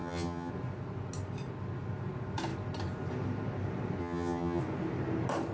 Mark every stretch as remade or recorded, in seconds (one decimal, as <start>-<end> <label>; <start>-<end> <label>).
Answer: 0.0-0.5 remade; 0.5-4.0 recorded; 4.0-4.6 remade; 4.6-5.5 recorded